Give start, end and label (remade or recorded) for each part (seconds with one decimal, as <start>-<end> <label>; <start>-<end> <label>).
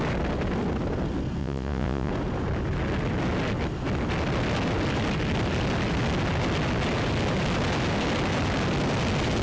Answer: 0.0-1.4 recorded; 1.4-2.1 remade; 2.1-9.4 recorded